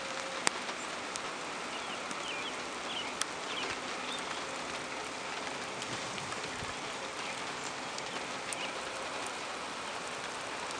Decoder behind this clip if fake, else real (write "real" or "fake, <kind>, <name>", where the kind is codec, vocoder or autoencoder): real